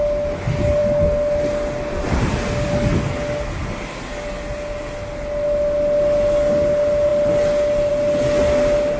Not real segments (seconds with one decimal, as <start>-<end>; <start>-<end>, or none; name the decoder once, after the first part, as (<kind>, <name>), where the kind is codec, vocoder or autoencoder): none